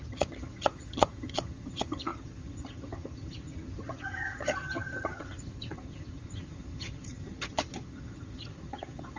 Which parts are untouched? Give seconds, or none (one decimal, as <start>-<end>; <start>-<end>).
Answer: none